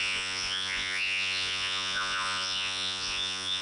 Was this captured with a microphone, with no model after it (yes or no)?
no